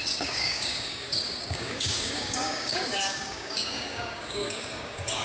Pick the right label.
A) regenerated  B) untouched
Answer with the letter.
A